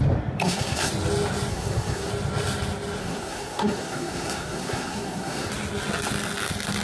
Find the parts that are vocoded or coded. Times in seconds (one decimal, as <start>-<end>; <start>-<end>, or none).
0.4-0.9; 1.5-2.1; 3.0-5.5